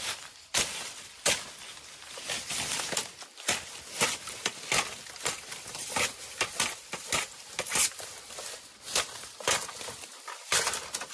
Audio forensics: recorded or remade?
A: recorded